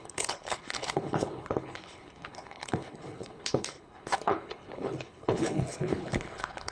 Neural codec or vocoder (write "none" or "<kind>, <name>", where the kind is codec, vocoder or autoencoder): codec, HILCodec